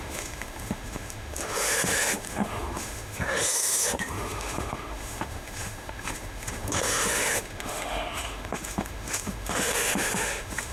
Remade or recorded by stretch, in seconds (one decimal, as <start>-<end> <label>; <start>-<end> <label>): 0.0-10.7 remade